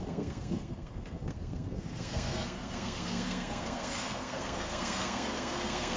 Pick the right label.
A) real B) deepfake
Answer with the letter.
B